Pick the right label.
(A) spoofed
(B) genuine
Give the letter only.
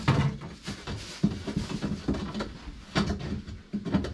B